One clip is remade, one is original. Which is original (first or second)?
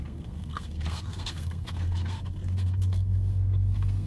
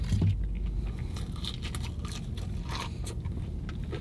second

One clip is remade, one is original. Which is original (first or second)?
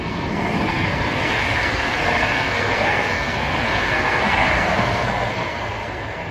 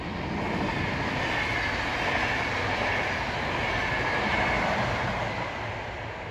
second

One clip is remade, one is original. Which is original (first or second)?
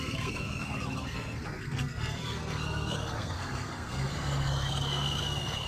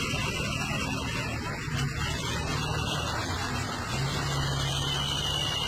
second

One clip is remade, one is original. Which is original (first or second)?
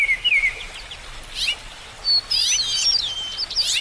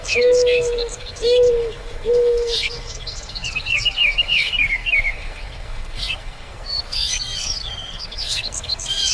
first